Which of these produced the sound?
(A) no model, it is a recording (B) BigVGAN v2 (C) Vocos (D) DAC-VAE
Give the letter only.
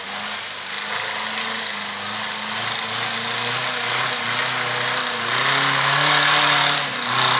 A